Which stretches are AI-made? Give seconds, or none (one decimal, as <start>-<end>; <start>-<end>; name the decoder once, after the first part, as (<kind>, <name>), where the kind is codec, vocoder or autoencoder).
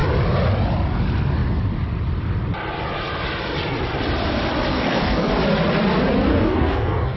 4.7-5.3 (codec, DAC); 6.3-7.2